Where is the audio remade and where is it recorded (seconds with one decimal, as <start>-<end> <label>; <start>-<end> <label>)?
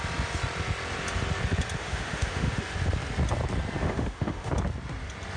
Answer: 0.0-1.8 recorded; 1.8-2.6 remade; 2.6-3.8 recorded; 3.8-4.5 remade; 4.5-5.4 recorded